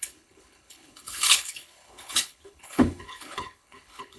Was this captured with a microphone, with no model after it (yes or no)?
no